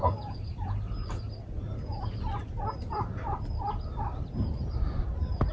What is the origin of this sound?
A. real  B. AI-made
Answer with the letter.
A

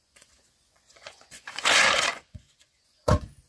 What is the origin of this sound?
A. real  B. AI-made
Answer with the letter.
B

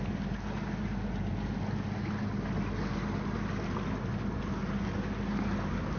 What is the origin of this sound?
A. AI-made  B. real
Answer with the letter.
B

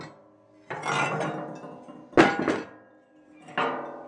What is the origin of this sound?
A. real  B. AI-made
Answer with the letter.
A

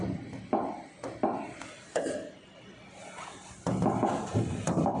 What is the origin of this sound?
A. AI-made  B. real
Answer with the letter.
B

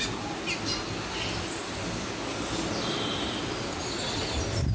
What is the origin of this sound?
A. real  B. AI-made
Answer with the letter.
A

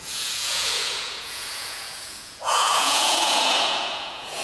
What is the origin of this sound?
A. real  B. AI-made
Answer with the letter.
B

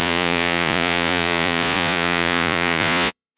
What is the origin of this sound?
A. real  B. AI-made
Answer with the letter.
B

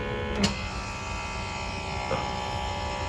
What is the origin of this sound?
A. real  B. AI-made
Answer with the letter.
A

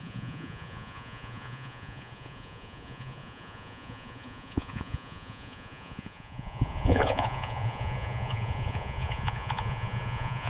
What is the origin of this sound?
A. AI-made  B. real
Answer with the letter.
A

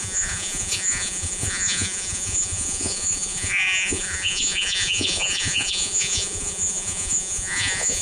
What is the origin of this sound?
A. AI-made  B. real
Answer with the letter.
A